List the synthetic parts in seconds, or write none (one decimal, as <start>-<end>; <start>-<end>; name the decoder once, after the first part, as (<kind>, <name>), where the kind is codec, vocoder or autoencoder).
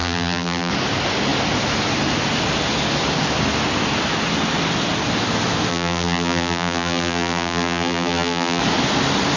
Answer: 0.0-0.7 (vocoder, BigVGAN v2); 5.7-8.6